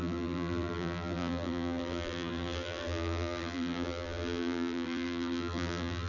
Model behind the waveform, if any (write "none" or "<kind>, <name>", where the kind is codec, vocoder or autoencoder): vocoder, BigVGAN v2